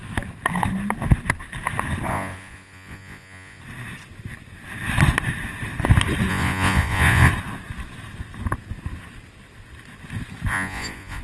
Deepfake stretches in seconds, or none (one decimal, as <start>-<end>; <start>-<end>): 2.1-3.6; 6.3-7.3; 10.5-11.2

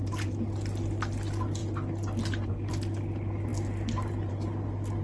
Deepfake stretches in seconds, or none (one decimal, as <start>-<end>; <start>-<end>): none

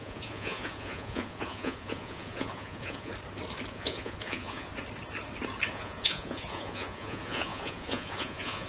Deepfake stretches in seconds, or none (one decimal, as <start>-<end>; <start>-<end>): 0.0-3.1; 3.7-4.7; 5.7-8.7